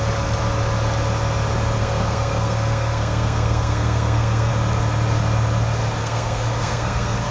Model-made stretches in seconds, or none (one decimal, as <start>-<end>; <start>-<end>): 1.8-4.5; 6.0-7.3